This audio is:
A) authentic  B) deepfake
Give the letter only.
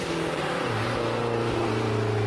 A